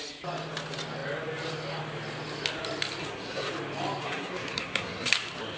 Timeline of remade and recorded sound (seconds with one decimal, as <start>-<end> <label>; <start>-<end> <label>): 0.0-3.0 recorded; 3.0-3.5 remade; 3.5-4.0 recorded; 4.0-5.1 remade; 5.1-5.6 recorded